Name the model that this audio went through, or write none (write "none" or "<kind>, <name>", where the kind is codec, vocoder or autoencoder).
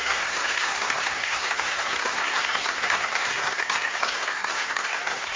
codec, SNAC